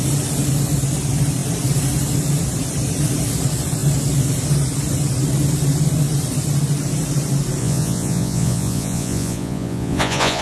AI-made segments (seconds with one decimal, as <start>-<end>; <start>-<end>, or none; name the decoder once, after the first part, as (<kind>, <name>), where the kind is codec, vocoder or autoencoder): 7.6-10.4 (vocoder, Vocos)